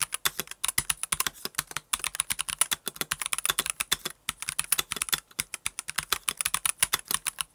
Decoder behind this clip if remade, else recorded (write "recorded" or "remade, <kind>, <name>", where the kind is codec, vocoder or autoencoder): recorded